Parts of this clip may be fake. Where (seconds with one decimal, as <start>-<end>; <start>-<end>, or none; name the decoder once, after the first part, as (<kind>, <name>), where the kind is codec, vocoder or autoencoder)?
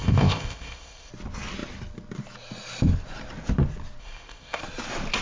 0.0-1.1 (codec, ZipCodec); 4.0-4.6